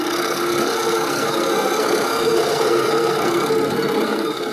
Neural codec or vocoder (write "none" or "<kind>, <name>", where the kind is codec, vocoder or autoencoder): codec, SNAC